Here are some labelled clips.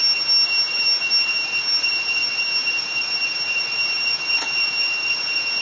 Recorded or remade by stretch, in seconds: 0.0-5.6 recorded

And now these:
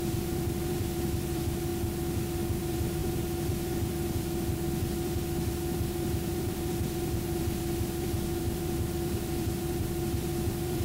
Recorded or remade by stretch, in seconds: 0.0-1.7 remade; 1.7-2.6 recorded; 2.6-10.8 remade

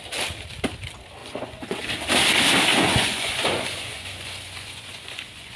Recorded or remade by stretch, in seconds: 0.0-1.2 recorded; 1.2-1.8 remade; 1.8-2.7 recorded; 2.7-5.6 remade

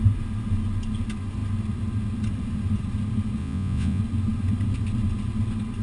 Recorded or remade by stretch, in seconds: 0.0-3.4 recorded; 3.4-4.0 remade; 4.0-5.8 recorded

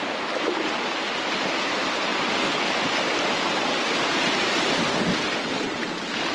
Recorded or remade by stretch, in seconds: 0.0-6.3 recorded

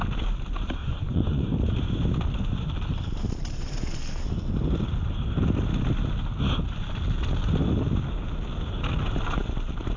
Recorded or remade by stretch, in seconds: 0.0-0.8 recorded; 0.8-1.5 remade; 1.5-10.0 recorded